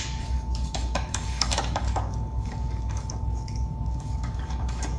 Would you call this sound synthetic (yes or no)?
yes